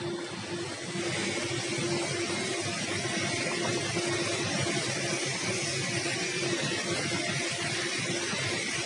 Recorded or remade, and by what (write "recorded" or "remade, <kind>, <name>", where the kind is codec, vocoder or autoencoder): recorded